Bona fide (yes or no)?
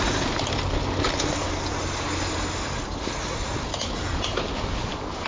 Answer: yes